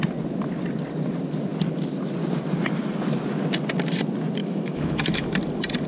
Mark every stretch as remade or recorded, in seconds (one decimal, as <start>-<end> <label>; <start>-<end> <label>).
0.0-4.4 recorded; 4.4-5.3 remade; 5.3-5.9 recorded